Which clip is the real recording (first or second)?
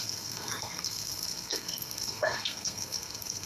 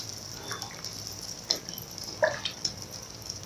second